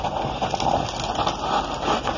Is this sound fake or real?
real